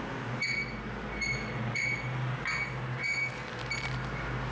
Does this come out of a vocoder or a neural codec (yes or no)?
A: no